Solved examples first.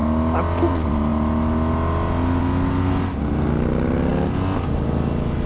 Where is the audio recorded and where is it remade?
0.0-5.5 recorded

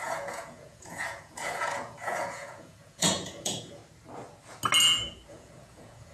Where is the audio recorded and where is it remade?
0.0-3.8 remade; 3.8-5.3 recorded; 5.3-6.1 remade